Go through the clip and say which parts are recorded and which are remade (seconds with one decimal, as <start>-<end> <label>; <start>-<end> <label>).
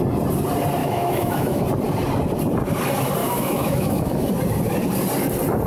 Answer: 0.0-0.8 recorded; 0.8-1.6 remade; 1.6-3.2 recorded; 3.2-4.3 remade; 4.3-5.7 recorded